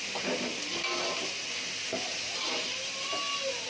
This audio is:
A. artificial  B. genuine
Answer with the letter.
B